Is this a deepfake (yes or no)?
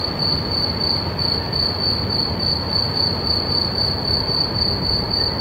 yes